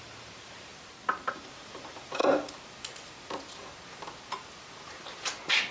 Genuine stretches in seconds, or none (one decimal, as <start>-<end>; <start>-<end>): 0.7-1.3; 2.2-5.7